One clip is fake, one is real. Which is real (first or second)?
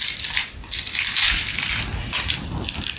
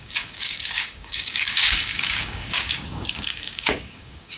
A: first